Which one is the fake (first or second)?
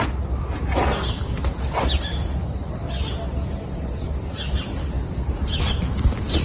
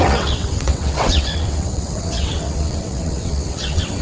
second